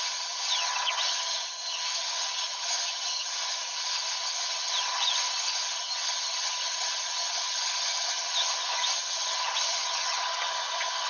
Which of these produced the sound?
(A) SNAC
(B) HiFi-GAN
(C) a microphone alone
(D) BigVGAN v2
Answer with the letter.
B